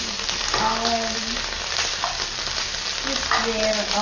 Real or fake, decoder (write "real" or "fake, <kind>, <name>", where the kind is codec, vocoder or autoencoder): real